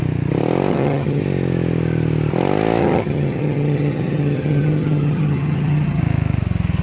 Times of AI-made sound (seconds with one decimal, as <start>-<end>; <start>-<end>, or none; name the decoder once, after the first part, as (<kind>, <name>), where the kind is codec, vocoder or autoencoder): 0.7-1.2 (vocoder, HiFi-GAN); 2.8-6.0